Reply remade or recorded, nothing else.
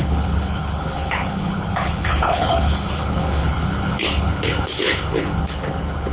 remade